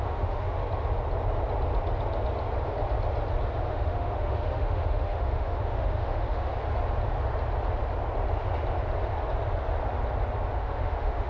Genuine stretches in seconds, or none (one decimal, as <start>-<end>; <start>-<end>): 0.6-3.7; 6.5-10.5